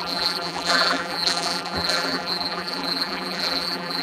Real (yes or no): no